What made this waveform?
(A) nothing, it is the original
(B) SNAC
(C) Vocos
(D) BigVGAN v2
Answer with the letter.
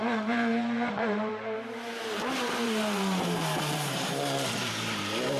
D